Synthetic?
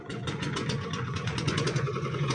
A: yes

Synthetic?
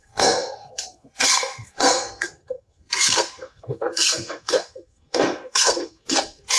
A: yes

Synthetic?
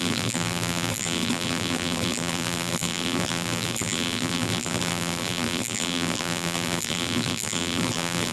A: yes